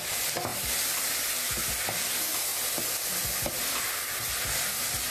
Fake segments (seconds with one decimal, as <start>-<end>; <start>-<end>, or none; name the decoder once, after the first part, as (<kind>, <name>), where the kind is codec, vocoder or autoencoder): none